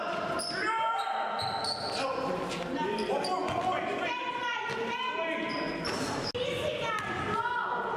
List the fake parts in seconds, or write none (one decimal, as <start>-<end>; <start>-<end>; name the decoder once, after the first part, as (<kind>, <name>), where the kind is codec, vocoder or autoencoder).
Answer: none

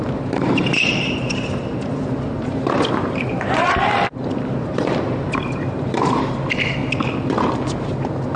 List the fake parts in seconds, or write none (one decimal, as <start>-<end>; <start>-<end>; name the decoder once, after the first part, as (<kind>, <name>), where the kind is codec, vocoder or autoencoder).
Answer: 0.0-6.8 (vocoder, BigVGAN v2)

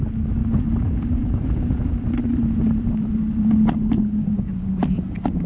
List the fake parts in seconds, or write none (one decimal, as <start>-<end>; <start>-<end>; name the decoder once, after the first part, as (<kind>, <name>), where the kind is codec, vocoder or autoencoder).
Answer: 0.4-3.1 (vocoder, BigVGAN v2)

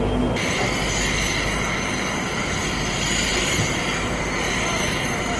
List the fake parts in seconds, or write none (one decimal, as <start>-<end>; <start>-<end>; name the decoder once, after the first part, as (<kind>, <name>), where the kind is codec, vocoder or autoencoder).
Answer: none

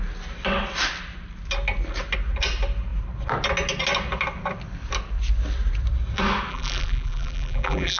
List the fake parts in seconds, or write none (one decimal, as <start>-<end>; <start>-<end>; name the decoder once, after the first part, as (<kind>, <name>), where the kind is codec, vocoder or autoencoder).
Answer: 6.5-8.0 (vocoder, BigVGAN v2)